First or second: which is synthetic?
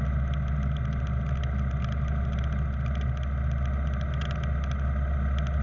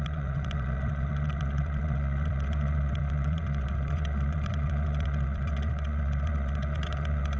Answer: second